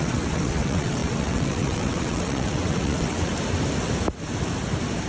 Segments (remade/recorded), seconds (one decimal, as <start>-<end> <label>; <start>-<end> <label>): 0.0-3.3 remade; 3.3-5.1 recorded